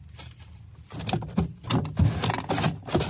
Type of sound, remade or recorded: recorded